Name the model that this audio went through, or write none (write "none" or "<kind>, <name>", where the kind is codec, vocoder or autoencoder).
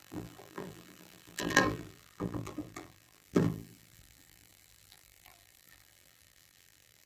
vocoder, BigVGAN v2